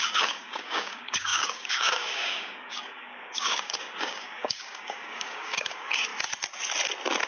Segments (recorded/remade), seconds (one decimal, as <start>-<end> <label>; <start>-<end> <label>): 0.0-6.1 remade; 6.1-7.3 recorded

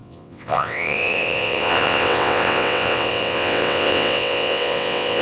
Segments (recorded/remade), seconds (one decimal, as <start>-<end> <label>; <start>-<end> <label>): 0.0-5.2 remade

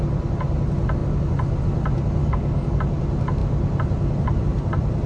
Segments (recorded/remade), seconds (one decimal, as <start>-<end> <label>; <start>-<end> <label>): 0.0-2.2 recorded; 2.2-2.8 remade; 2.8-5.1 recorded

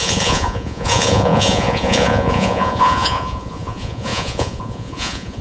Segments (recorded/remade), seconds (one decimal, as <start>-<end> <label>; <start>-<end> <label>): 0.0-5.4 remade

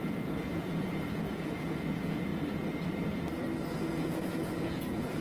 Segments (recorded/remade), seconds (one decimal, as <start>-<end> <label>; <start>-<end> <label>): 0.0-2.3 remade; 2.3-3.8 recorded; 3.8-5.2 remade

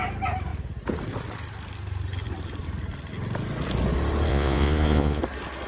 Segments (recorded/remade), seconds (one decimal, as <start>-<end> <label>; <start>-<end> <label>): 0.0-4.3 recorded; 4.3-5.2 remade; 5.2-5.7 recorded

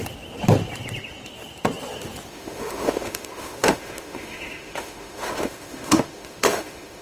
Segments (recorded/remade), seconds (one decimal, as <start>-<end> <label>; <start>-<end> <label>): 0.0-2.3 recorded; 2.3-7.0 remade